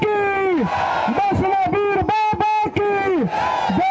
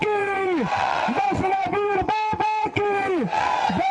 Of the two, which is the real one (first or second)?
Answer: first